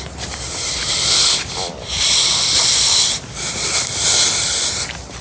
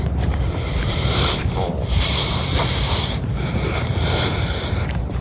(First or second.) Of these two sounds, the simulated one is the second